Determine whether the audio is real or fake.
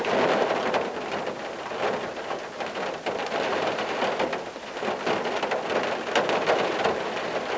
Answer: real